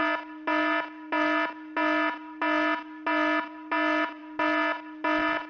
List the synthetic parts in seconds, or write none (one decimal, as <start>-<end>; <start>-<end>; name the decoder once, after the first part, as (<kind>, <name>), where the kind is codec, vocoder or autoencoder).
none